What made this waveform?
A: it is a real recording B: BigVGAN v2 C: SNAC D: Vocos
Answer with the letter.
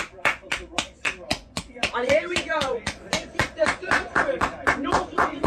D